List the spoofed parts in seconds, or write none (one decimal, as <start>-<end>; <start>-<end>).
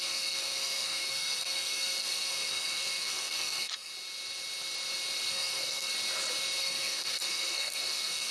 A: 0.0-3.9; 5.3-5.9; 6.6-8.3